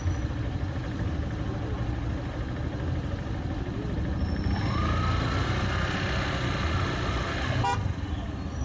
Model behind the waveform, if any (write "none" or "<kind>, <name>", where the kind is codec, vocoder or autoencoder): none